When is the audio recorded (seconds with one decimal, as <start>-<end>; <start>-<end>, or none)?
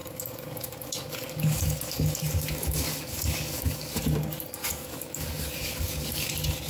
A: 4.0-4.6; 6.3-6.7